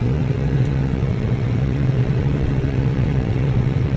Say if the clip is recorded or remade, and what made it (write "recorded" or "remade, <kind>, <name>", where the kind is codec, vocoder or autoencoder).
remade, vocoder, WaveNeXt